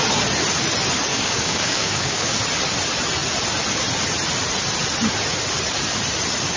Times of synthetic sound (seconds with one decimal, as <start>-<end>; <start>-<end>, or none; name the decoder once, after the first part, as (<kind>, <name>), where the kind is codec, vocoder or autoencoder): 1.1-2.4 (codec, DAC)